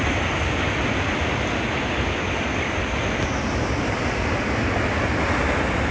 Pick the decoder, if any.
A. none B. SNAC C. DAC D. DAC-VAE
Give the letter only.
A